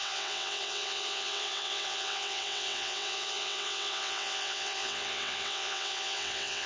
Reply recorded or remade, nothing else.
remade